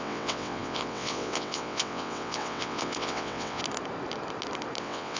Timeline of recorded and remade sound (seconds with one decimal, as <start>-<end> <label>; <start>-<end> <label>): 0.0-3.6 remade; 3.6-4.8 recorded; 4.8-5.2 remade